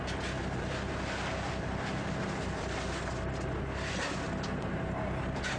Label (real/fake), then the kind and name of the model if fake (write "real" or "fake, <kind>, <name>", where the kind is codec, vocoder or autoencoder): real